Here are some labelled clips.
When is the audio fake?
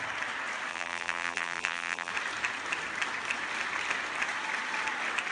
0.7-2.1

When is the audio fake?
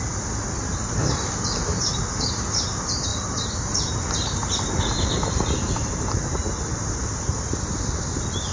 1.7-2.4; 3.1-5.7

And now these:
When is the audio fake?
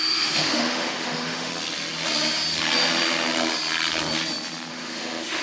0.0-1.5; 4.7-5.4